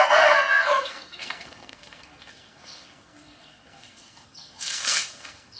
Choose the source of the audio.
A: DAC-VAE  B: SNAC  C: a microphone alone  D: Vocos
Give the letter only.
B